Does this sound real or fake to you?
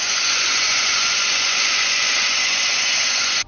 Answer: fake